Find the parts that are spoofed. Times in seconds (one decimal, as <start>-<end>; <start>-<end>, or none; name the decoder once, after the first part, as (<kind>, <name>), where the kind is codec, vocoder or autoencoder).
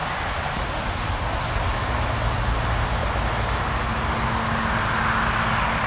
none